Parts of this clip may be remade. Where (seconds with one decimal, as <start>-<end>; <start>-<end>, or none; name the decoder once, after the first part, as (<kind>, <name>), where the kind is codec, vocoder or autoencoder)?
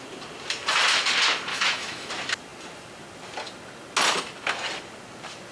1.5-2.1 (autoencoder, DAC-VAE)